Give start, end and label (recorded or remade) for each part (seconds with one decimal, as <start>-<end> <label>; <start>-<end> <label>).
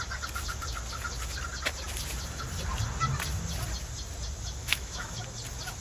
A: 0.0-4.6 recorded; 4.6-5.2 remade; 5.2-5.8 recorded